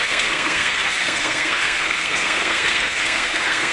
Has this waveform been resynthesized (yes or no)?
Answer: yes